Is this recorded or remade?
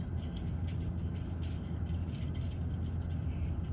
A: recorded